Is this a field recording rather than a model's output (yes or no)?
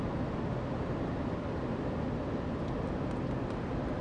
yes